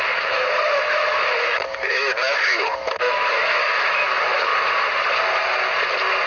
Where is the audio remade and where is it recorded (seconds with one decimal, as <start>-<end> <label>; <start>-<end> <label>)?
0.0-4.5 remade; 4.5-6.3 recorded